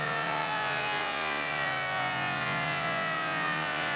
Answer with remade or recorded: remade